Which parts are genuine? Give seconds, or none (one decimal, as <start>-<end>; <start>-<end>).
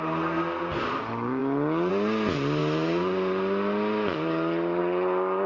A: 0.0-2.6; 4.8-5.5